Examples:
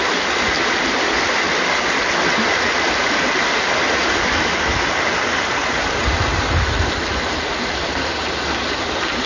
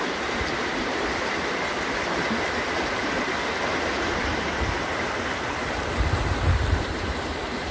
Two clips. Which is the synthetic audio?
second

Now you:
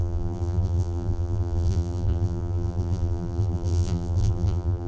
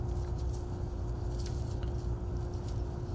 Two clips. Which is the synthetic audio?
first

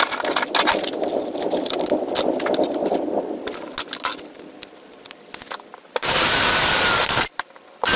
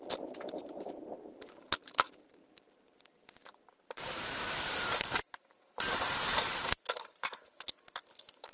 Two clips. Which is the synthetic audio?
second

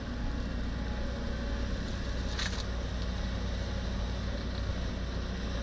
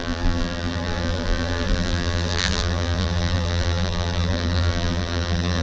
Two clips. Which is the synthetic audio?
second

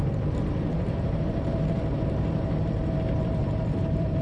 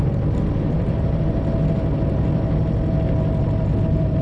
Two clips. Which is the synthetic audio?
first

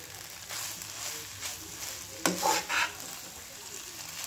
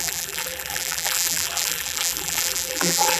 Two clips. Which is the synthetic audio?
second